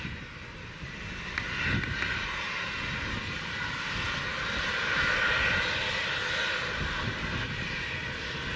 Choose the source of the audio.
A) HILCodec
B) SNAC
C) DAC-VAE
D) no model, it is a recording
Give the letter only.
D